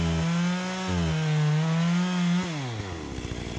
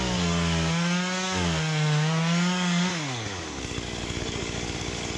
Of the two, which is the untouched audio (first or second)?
first